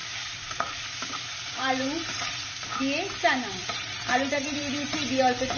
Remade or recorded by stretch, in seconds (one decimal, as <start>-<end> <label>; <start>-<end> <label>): 0.0-2.8 remade; 2.8-3.6 recorded; 3.6-4.6 remade; 4.6-5.6 recorded